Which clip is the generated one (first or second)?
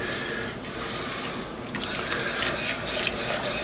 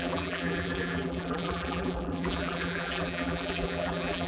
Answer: second